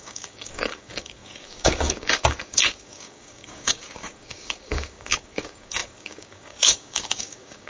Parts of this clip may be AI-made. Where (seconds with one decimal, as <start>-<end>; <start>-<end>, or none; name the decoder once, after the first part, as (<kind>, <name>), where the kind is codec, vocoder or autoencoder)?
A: 0.0-7.7 (codec, DAC)

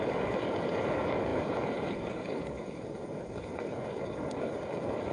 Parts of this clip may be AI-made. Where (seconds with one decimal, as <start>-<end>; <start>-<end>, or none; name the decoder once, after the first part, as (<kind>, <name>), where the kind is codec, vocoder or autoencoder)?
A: 0.0-5.1 (codec, DAC)

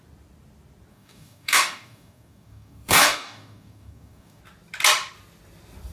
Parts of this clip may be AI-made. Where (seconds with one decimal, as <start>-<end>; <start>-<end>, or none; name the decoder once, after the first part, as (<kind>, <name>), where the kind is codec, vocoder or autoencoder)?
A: 0.9-4.4 (codec, DAC)

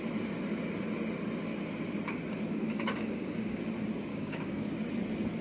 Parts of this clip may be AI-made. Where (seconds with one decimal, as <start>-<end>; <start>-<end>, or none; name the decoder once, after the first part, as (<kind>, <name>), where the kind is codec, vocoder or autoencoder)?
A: 2.5-3.6 (codec, DAC); 4.1-4.6

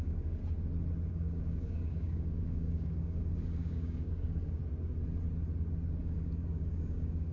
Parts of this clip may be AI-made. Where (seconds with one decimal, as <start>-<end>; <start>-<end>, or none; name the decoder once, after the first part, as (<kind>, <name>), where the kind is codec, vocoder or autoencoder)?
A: 0.0-0.4 (codec, DAC); 1.1-4.6; 6.0-7.3